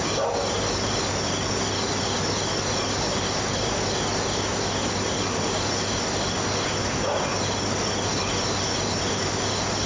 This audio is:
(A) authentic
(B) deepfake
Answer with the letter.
A